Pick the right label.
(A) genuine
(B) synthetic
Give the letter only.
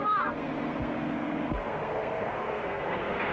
B